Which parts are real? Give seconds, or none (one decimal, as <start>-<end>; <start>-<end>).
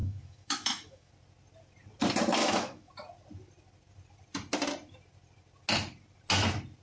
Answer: 1.1-2.4; 2.9-6.8